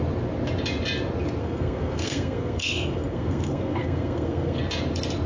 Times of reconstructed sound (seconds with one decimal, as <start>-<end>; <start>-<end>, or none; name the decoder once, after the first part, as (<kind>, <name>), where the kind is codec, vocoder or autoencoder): 1.4-4.6 (codec, SNAC)